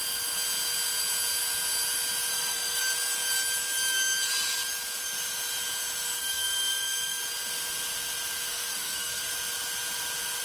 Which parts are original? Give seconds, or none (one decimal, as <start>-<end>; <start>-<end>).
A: 0.0-2.3; 2.8-6.2; 7.2-8.5; 9.2-10.4